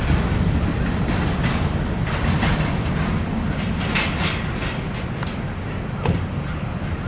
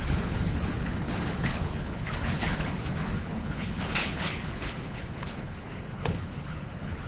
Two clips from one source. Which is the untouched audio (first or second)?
first